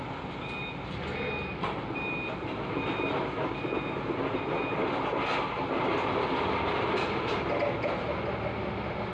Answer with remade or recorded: recorded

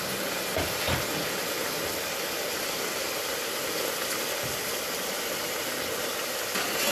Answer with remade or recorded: recorded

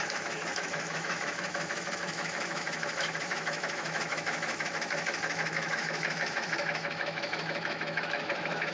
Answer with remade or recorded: remade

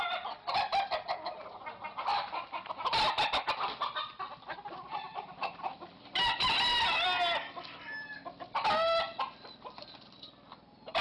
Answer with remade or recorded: recorded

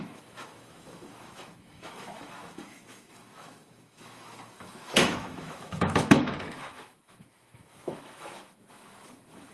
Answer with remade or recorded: remade